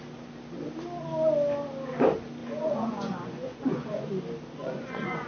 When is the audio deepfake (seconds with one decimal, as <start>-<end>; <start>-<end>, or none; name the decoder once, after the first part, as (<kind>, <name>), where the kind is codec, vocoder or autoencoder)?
2.4-4.1 (vocoder, Vocos); 4.6-5.3